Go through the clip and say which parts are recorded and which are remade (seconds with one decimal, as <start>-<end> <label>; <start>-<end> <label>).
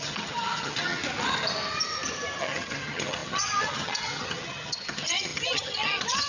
0.0-1.0 remade; 1.0-2.4 recorded; 2.4-6.3 remade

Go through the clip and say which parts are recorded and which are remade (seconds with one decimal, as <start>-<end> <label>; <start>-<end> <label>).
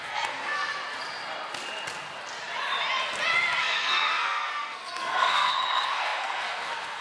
0.0-0.7 remade; 0.7-3.6 recorded; 3.6-7.0 remade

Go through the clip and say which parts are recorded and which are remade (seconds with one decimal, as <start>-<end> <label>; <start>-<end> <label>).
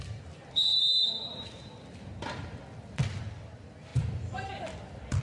0.0-5.2 remade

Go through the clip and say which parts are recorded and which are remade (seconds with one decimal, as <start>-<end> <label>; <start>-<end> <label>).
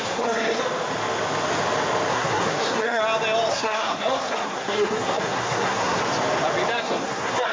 0.0-0.6 remade; 0.6-2.1 recorded; 2.1-3.0 remade; 3.0-3.5 recorded; 3.5-6.0 remade; 6.0-6.8 recorded; 6.8-7.5 remade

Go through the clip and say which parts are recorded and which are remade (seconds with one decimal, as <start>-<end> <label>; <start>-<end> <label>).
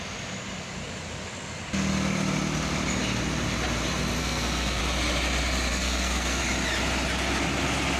0.0-4.2 recorded; 4.2-4.8 remade; 4.8-5.7 recorded; 5.7-6.4 remade; 6.4-8.0 recorded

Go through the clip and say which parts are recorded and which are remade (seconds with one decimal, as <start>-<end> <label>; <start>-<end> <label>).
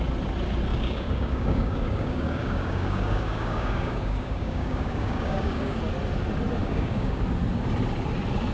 0.0-0.7 recorded; 0.7-5.8 remade; 5.8-6.6 recorded; 6.6-7.2 remade; 7.2-8.5 recorded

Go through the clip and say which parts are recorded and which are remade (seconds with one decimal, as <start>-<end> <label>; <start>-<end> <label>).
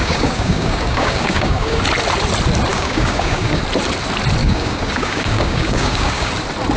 0.0-1.8 remade; 1.8-2.7 recorded; 2.7-3.6 remade; 3.6-4.4 recorded; 4.4-6.3 remade; 6.3-6.8 recorded